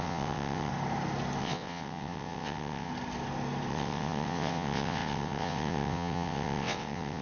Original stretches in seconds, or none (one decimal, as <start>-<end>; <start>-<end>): 0.7-1.4; 2.9-3.7

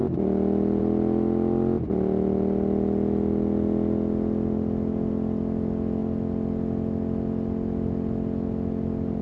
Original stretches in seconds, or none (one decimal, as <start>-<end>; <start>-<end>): 0.0-9.2

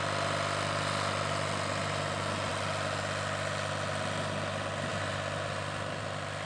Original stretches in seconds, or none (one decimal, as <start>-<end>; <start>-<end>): 0.0-6.5

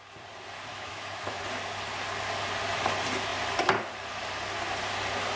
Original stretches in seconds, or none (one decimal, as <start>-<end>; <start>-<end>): 0.0-0.7; 1.4-5.4

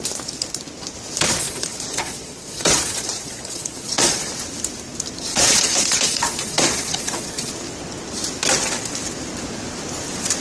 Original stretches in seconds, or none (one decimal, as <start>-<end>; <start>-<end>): 0.0-1.4; 4.3-5.3; 7.5-10.4